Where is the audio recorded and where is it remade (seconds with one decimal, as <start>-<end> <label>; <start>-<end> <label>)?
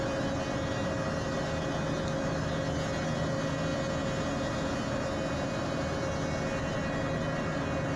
0.0-8.0 recorded